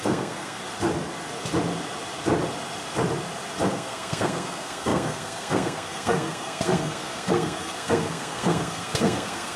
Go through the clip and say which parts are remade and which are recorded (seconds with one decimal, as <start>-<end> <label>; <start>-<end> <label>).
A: 0.0-0.6 remade; 0.6-3.7 recorded; 3.7-9.6 remade